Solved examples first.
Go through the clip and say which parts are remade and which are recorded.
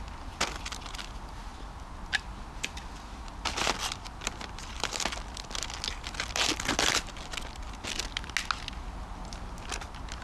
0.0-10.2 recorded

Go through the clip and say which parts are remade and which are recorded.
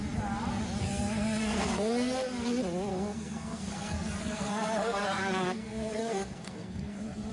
0.0-0.8 recorded; 0.8-1.9 remade; 1.9-2.9 recorded; 2.9-7.3 remade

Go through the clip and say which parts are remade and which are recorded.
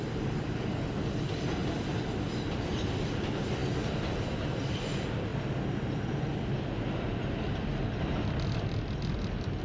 0.0-3.6 remade; 3.6-4.2 recorded; 4.2-5.3 remade; 5.3-8.0 recorded; 8.0-9.6 remade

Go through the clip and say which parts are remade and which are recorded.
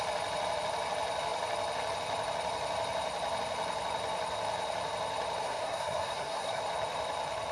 0.0-5.4 recorded; 5.4-6.6 remade; 6.6-7.5 recorded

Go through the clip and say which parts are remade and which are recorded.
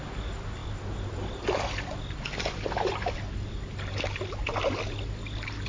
0.0-5.7 recorded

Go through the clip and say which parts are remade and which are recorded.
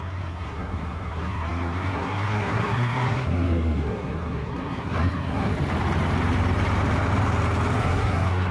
0.0-5.5 remade; 5.5-7.8 recorded; 7.8-8.5 remade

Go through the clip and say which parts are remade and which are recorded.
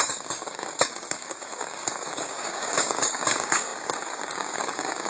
0.0-5.1 remade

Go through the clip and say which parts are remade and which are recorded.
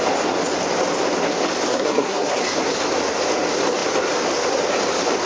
0.0-1.7 recorded; 1.7-2.4 remade; 2.4-5.3 recorded